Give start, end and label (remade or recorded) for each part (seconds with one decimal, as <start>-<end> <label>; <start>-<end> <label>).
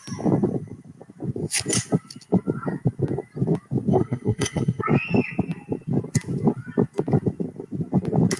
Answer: 0.0-3.9 recorded; 3.9-4.8 remade; 4.8-8.4 recorded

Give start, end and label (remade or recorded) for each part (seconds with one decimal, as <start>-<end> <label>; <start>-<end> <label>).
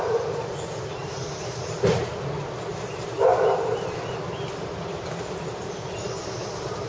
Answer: 0.0-1.0 recorded; 1.0-2.1 remade; 2.1-6.9 recorded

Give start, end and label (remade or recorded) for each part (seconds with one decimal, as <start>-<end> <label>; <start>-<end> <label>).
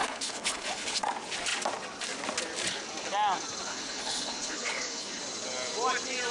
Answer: 0.0-1.0 remade; 1.0-3.7 recorded; 3.7-5.2 remade; 5.2-6.3 recorded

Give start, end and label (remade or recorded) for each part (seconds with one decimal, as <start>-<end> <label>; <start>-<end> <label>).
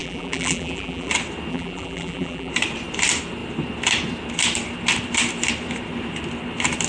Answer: 0.0-1.1 remade; 1.1-1.5 recorded; 1.5-2.5 remade; 2.5-6.9 recorded